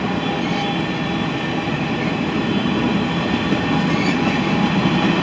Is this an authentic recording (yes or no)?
yes